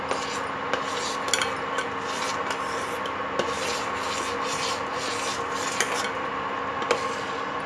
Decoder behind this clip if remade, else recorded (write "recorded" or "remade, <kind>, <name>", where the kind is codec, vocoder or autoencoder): recorded